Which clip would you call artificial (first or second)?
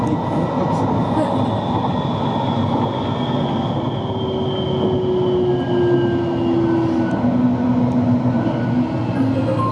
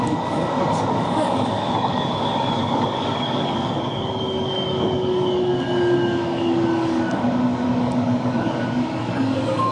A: second